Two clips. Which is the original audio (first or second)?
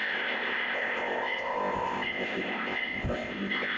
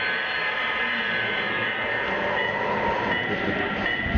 second